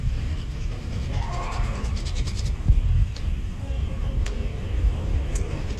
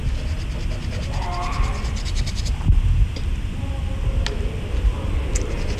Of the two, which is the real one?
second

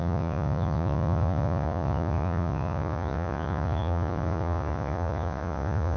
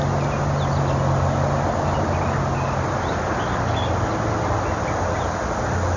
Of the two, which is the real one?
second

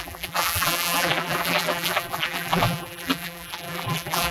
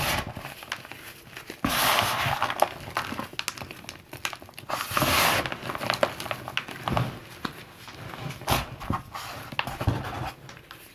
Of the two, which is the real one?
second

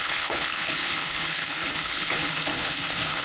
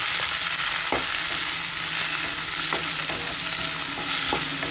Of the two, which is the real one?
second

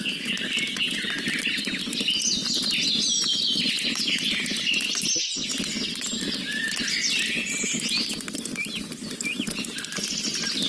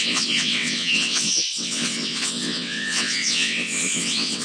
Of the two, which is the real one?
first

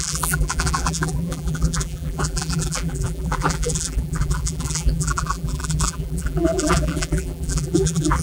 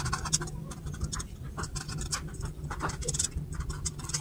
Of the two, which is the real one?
second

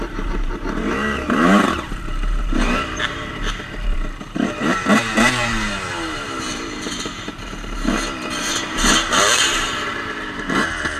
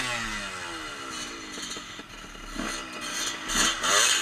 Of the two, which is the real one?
second